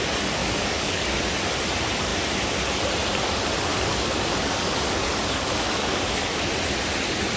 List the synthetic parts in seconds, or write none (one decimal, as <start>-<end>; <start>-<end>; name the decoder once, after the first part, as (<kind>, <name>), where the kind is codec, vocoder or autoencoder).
0.4-1.2 (codec, DAC); 3.7-6.4